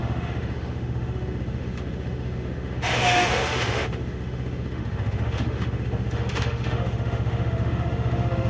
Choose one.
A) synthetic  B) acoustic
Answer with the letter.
A